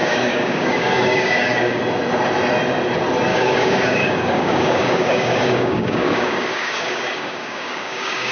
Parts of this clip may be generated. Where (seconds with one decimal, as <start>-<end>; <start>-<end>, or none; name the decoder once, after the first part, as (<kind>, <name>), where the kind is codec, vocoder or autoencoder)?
0.0-1.8 (codec, DAC); 3.3-8.3